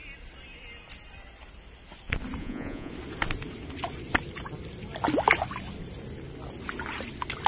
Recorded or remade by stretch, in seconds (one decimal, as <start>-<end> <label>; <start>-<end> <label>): 0.0-2.4 recorded; 2.4-2.9 remade; 2.9-7.5 recorded